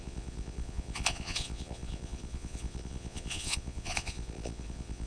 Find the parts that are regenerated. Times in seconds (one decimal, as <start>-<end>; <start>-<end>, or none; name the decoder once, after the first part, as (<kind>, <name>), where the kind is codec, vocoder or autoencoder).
0.0-5.1 (vocoder, Vocos)